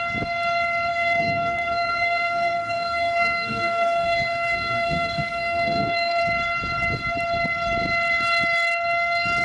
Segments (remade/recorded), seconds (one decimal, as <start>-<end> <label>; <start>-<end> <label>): 0.0-0.9 recorded; 0.9-6.2 remade; 6.2-9.4 recorded